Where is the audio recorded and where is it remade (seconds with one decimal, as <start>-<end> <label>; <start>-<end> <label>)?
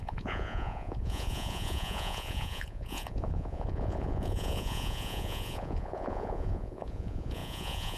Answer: 0.0-8.0 remade